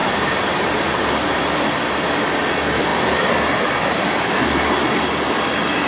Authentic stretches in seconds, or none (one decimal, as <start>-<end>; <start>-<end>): 1.4-5.9